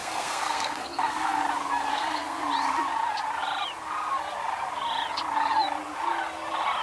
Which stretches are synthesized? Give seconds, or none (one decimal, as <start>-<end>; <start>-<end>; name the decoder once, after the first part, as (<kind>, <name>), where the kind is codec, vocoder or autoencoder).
0.0-1.4 (codec, SNAC); 1.9-2.4